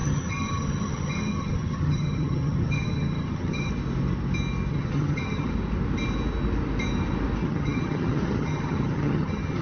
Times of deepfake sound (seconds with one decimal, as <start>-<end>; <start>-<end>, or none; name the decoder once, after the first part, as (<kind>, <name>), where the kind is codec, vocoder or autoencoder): 0.0-3.7 (vocoder, HiFi-GAN); 4.7-5.5; 7.4-9.6